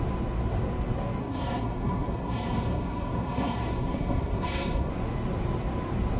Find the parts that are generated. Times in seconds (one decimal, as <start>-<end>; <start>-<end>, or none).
1.2-4.9